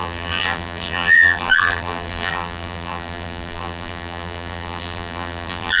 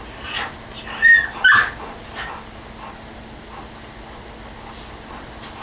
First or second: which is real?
second